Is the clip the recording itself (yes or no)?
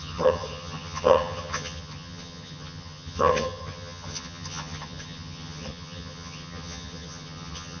no